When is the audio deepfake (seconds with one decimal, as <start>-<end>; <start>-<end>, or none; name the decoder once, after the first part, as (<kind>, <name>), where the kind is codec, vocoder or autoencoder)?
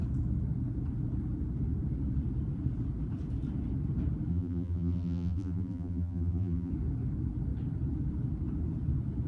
4.3-6.7 (vocoder, BigVGAN v2)